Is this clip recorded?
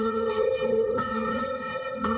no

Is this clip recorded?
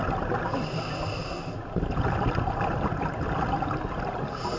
yes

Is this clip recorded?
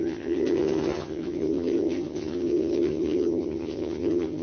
no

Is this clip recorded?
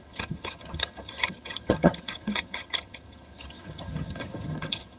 no